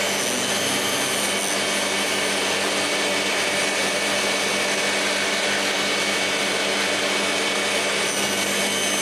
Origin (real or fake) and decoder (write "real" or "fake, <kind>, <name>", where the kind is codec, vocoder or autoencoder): real